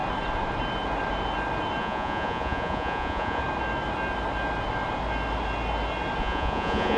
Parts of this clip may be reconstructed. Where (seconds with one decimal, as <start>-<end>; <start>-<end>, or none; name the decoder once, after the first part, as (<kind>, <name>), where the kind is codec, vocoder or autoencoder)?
1.8-3.4 (vocoder, Vocos); 6.2-7.0